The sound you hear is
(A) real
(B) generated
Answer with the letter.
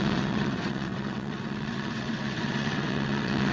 B